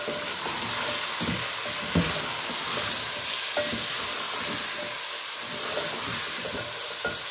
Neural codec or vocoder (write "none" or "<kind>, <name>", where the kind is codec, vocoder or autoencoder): none